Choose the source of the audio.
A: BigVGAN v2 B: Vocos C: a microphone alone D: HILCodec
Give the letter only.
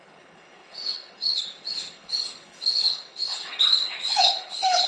D